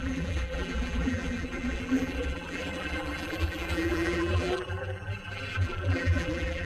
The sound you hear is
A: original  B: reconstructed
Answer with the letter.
B